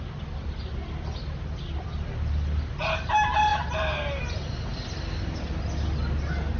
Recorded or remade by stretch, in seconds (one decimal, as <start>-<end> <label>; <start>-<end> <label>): 0.0-6.6 recorded